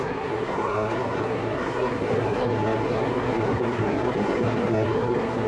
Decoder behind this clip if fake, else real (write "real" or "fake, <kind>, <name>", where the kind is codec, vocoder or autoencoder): fake, codec, SNAC